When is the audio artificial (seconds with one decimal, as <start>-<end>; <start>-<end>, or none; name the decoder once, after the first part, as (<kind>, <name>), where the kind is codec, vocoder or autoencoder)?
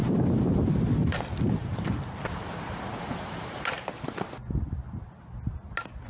0.0-0.5 (vocoder, BigVGAN v2); 1.6-3.9